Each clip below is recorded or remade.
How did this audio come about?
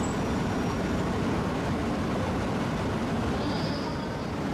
recorded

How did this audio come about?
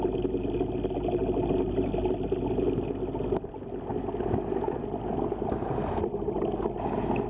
recorded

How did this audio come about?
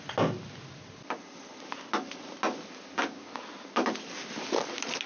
recorded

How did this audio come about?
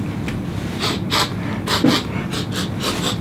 recorded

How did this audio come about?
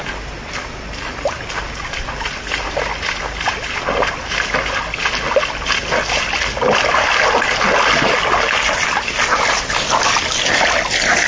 recorded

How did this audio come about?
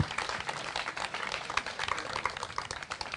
remade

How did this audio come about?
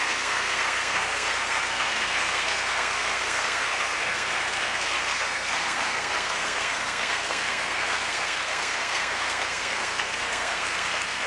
remade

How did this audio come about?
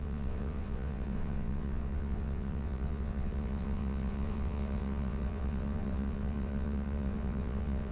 remade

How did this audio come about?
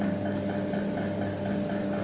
recorded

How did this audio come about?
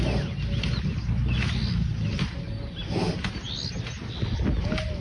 recorded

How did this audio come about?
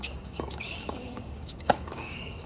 remade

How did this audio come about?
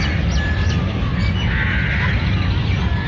recorded